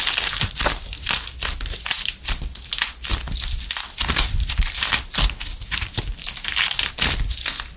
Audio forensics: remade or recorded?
recorded